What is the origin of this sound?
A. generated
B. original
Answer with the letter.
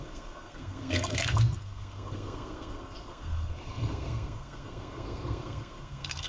A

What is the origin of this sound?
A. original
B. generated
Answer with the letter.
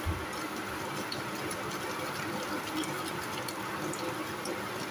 A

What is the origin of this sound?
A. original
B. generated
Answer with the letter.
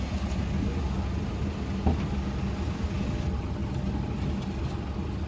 A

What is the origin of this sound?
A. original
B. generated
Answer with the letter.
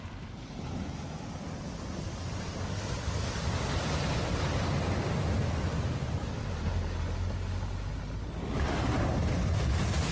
A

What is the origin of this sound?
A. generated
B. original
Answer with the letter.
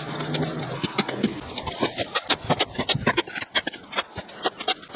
B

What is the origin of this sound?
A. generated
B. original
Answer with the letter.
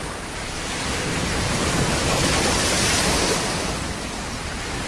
B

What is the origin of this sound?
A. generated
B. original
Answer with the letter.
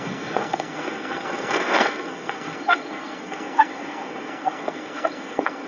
A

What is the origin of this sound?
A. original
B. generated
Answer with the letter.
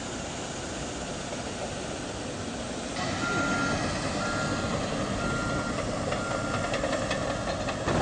A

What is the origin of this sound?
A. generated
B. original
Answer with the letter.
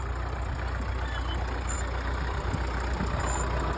B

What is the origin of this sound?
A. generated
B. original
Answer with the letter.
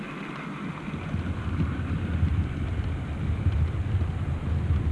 B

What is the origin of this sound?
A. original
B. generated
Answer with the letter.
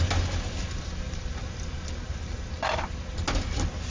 A